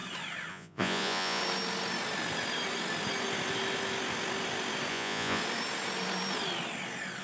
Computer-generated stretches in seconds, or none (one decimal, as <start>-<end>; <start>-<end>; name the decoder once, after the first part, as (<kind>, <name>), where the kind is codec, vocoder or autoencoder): 0.5-1.4 (vocoder, Vocos); 4.9-5.4